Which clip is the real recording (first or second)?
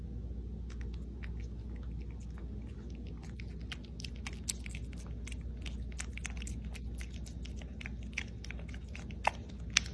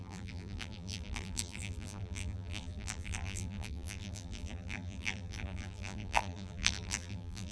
first